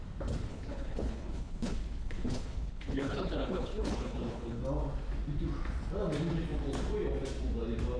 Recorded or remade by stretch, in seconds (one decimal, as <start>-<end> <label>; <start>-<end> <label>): 0.0-0.5 recorded; 0.5-4.6 remade; 4.6-8.0 recorded